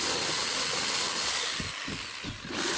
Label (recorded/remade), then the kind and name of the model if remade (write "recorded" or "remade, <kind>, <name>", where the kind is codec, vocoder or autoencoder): recorded